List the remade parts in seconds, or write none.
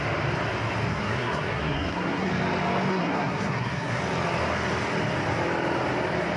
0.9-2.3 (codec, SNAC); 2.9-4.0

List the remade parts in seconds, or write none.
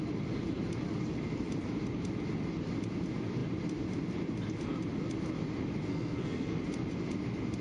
5.9-6.6 (codec, SNAC)